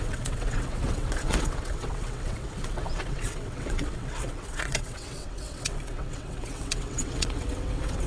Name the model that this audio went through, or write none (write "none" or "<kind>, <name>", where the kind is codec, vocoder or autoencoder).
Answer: vocoder, WaveNeXt